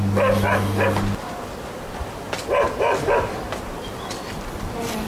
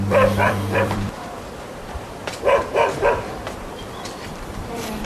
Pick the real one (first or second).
first